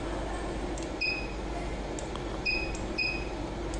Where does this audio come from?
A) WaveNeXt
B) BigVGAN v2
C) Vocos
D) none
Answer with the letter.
D